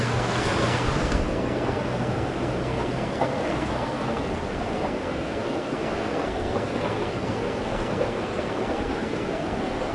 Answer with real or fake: fake